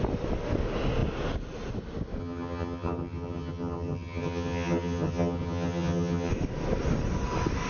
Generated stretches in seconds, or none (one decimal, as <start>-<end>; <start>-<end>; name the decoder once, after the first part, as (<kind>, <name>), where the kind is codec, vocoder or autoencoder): 2.2-6.3 (vocoder, HiFi-GAN)